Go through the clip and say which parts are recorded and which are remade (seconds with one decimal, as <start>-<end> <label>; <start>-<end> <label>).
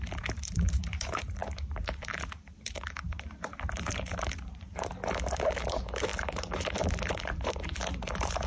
0.0-6.1 remade; 6.1-6.9 recorded; 6.9-8.5 remade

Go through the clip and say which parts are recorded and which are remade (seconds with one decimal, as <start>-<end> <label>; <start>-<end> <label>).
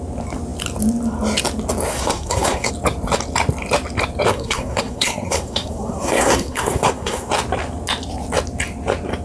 0.0-1.9 recorded; 1.9-2.7 remade; 2.7-4.3 recorded; 4.3-7.3 remade; 7.3-9.2 recorded